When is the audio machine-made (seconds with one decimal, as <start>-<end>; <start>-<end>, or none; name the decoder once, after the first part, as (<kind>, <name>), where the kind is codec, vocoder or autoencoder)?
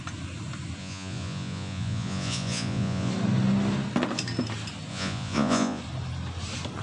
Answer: 0.8-3.1 (vocoder, Vocos); 4.9-5.8